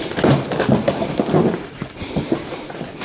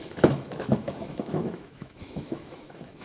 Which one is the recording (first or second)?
first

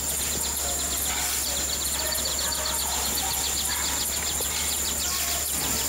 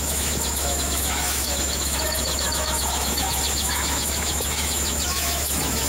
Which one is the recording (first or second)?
first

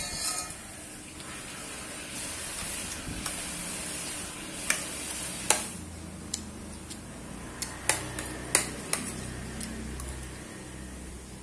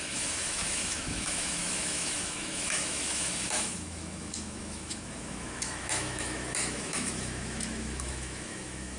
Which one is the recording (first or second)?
first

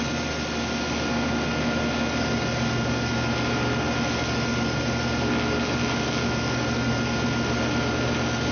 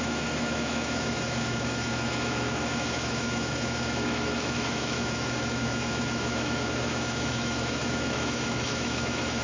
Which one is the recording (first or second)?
first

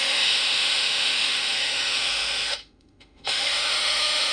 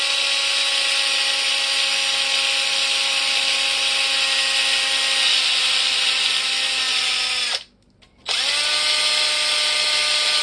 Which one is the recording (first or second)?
second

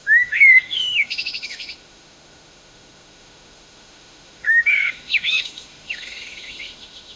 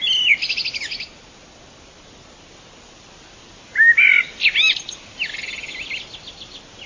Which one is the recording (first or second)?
second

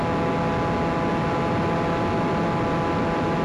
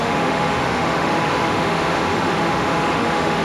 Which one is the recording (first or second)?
first